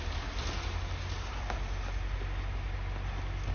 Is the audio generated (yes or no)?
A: no